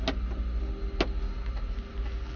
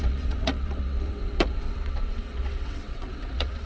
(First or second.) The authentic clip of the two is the first